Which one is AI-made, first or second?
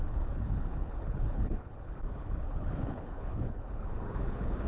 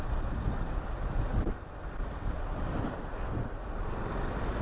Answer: first